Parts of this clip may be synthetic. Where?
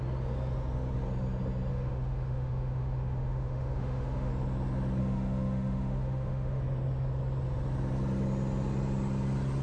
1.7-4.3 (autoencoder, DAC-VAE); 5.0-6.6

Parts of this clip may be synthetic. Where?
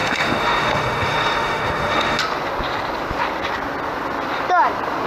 0.0-2.2 (autoencoder, DAC-VAE)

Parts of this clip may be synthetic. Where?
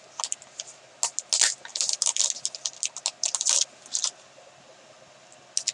none